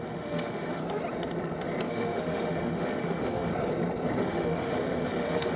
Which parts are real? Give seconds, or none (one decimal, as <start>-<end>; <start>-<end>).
0.8-1.9; 3.5-4.2